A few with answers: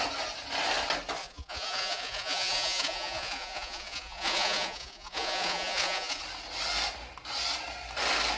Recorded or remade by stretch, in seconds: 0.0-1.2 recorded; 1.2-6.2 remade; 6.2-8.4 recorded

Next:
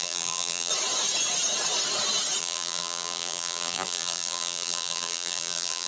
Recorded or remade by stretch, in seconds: 0.0-0.7 remade; 0.7-2.4 recorded; 2.4-5.9 remade

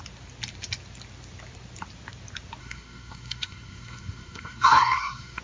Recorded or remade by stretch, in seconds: 0.0-2.6 recorded; 2.6-5.4 remade